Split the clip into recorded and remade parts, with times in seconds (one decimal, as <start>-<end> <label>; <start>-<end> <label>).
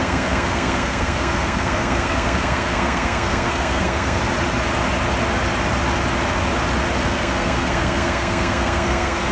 0.0-4.2 remade; 4.2-7.0 recorded; 7.0-9.3 remade